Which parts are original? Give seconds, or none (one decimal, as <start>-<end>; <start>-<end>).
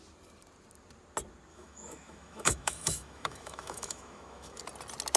0.0-1.5; 4.6-5.2